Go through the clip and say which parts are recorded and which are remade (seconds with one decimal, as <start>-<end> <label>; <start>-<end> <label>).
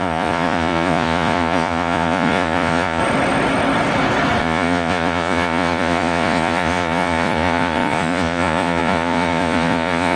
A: 0.0-3.0 remade; 3.0-4.4 recorded; 4.4-10.2 remade